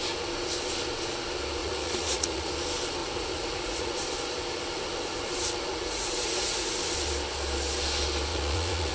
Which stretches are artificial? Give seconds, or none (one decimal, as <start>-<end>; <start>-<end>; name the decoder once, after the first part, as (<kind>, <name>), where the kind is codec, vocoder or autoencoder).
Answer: 1.6-2.5 (vocoder, Vocos); 3.0-4.0; 5.7-6.8; 8.3-8.9